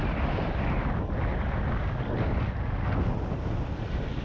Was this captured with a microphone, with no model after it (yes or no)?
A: yes